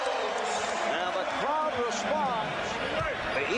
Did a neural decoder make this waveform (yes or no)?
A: no